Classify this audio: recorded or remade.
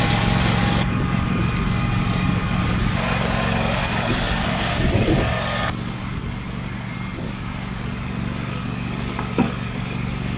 remade